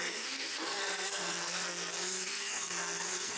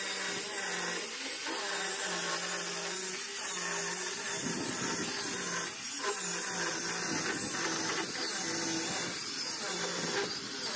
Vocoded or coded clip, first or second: first